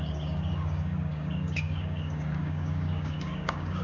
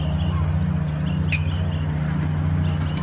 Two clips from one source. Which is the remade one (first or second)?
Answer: first